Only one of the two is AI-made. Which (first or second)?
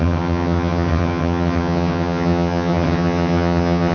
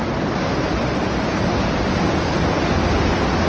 first